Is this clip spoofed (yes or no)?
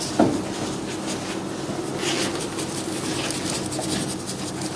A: no